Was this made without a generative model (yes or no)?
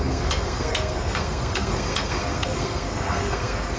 no